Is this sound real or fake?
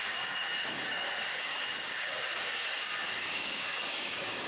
fake